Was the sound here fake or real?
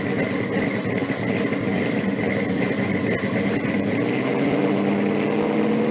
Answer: real